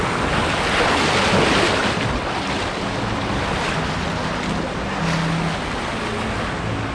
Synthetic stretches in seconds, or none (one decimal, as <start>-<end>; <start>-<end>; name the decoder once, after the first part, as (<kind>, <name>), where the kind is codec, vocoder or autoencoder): none